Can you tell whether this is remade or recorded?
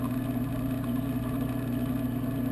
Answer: recorded